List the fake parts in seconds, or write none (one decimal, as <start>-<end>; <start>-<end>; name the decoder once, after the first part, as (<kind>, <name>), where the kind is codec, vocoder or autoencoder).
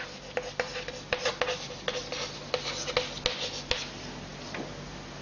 none